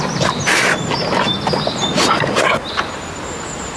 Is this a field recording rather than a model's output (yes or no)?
yes